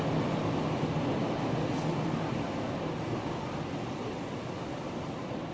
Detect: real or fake real